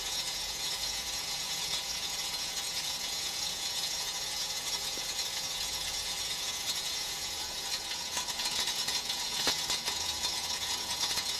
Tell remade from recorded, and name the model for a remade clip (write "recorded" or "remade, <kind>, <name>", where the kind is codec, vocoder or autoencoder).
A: remade, vocoder, Vocos